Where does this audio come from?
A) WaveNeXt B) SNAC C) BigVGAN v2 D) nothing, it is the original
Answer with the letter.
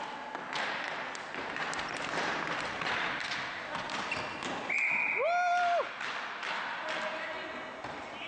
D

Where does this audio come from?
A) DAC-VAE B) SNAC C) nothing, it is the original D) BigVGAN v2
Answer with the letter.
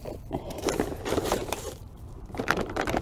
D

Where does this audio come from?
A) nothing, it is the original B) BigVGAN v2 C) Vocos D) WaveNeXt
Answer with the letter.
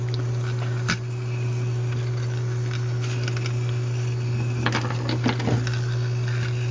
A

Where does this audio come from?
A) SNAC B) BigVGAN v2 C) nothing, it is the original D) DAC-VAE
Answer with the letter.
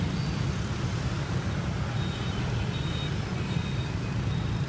C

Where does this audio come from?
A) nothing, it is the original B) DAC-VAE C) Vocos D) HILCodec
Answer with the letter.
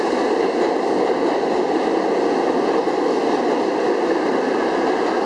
A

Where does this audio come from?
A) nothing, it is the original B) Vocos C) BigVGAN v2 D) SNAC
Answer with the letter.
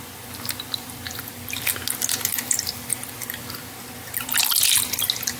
A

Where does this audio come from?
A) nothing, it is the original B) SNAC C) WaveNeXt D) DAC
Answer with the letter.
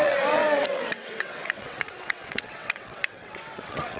C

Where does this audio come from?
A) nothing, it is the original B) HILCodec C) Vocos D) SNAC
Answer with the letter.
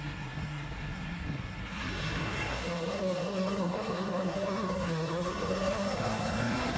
D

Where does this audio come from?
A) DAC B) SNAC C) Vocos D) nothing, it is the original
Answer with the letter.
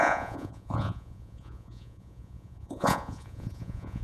C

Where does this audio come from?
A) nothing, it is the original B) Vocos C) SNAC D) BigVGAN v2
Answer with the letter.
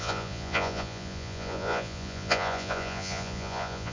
B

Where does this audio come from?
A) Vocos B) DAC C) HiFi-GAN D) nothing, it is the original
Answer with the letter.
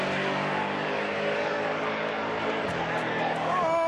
B